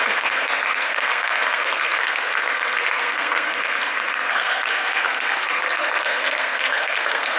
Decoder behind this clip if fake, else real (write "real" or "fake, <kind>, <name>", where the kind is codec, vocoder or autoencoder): fake, codec, SNAC